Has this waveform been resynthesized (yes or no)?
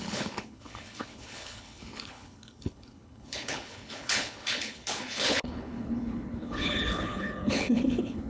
yes